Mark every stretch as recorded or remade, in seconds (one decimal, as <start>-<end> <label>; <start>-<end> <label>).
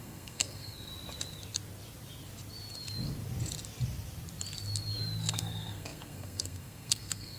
0.0-0.9 remade; 0.9-5.3 recorded; 5.3-7.4 remade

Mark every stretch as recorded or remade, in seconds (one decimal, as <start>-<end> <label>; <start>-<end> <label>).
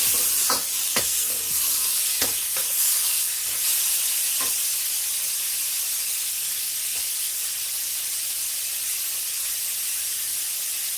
0.0-0.9 recorded; 0.9-3.7 remade; 3.7-6.1 recorded; 6.1-7.4 remade; 7.4-11.0 recorded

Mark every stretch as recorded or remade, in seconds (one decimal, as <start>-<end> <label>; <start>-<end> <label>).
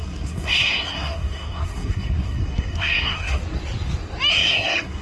0.0-3.4 remade; 3.4-4.3 recorded; 4.3-5.0 remade